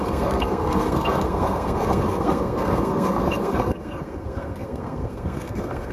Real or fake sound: fake